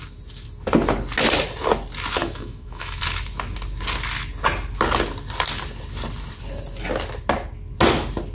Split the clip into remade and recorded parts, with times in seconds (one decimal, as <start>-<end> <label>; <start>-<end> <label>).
0.0-2.2 recorded; 2.2-3.0 remade; 3.0-8.3 recorded